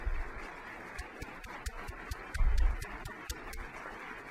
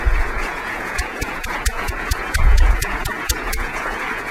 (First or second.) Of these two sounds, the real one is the first